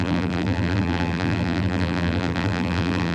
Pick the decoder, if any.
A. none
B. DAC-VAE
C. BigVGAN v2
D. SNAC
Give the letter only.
C